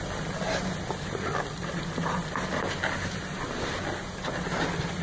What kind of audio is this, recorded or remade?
recorded